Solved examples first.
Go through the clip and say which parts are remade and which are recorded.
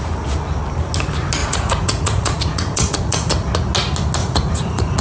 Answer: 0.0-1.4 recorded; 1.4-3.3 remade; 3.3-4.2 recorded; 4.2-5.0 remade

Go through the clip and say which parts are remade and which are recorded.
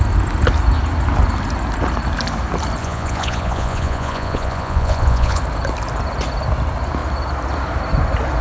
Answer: 0.0-2.8 recorded; 2.8-5.4 remade; 5.4-8.4 recorded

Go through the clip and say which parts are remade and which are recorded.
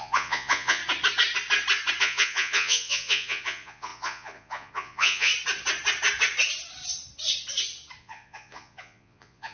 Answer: 0.0-0.8 remade; 0.8-2.0 recorded; 2.0-5.3 remade; 5.3-8.0 recorded; 8.0-9.5 remade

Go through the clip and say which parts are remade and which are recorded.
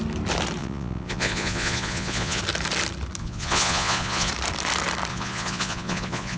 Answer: 0.0-0.6 recorded; 0.6-2.4 remade; 2.4-3.2 recorded; 3.2-4.3 remade; 4.3-5.1 recorded; 5.1-6.4 remade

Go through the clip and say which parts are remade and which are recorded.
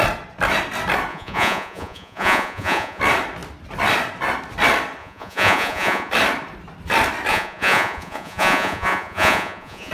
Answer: 0.0-1.1 recorded; 1.1-3.0 remade; 3.0-5.0 recorded; 5.0-6.1 remade; 6.1-7.3 recorded; 7.3-9.9 remade